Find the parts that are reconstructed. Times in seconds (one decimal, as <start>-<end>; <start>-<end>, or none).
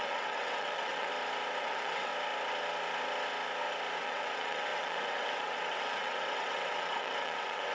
0.0-1.1; 1.6-2.1; 4.0-7.7